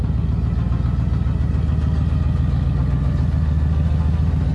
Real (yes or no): yes